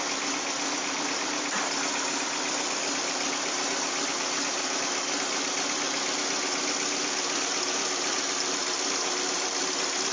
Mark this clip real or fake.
real